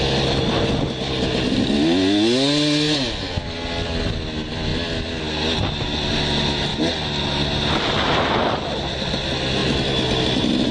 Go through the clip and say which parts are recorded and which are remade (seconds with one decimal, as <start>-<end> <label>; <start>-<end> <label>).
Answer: 0.0-10.7 recorded